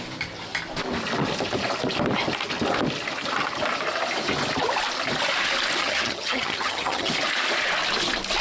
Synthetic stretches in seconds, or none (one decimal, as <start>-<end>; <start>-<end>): 5.8-7.1